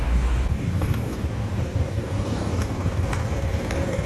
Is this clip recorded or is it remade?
remade